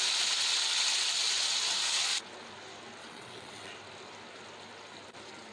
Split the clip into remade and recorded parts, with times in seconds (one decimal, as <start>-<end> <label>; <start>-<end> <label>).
0.0-3.0 recorded; 3.0-3.7 remade; 3.7-5.5 recorded